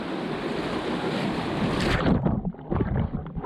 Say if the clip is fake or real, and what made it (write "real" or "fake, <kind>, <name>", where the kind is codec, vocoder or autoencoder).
real